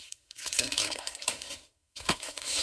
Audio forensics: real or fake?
fake